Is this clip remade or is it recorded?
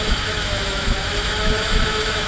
remade